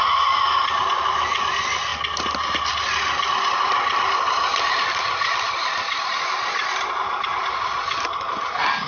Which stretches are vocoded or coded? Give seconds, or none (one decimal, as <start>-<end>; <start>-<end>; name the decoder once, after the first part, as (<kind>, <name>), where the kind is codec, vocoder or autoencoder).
none